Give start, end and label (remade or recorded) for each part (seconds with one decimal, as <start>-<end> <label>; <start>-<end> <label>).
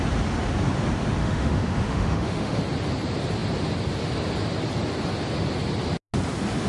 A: 0.0-1.2 recorded; 1.2-2.6 remade; 2.6-6.7 recorded